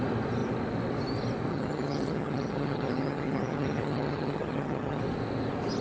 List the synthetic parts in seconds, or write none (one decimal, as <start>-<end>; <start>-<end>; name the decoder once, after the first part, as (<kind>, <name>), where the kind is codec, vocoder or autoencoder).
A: 1.5-5.0 (vocoder, HiFi-GAN)